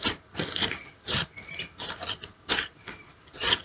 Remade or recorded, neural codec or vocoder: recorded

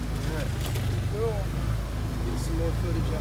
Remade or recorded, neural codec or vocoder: recorded